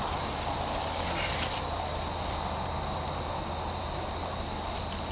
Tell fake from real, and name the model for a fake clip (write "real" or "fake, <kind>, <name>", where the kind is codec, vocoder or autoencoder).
real